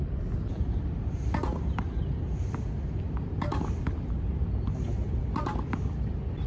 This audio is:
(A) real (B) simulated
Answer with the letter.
A